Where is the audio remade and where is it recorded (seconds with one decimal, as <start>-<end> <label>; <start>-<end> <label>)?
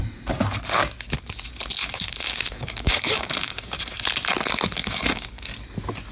0.0-1.8 recorded; 1.8-3.8 remade; 3.8-4.8 recorded; 4.8-5.5 remade; 5.5-6.1 recorded